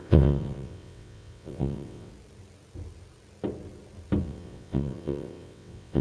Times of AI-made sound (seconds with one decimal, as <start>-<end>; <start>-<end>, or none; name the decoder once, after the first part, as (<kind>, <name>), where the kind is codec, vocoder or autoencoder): 0.0-2.1 (vocoder, WaveNeXt); 4.2-6.0